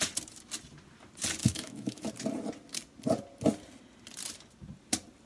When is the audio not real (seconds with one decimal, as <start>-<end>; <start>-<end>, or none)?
1.4-2.1